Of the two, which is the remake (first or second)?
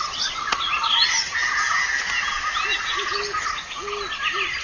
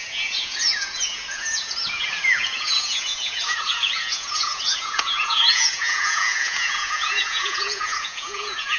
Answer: second